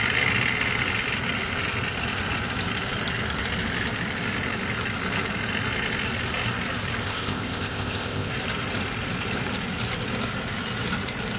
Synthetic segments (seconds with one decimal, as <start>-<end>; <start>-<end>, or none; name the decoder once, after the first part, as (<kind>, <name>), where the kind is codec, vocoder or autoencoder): 7.0-8.3 (codec, ZipCodec)